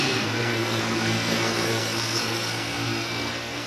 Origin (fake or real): fake